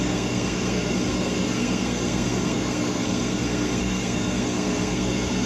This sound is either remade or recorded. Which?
remade